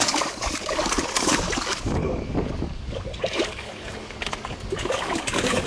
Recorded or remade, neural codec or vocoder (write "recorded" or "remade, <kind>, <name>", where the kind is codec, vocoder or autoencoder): remade, codec, DAC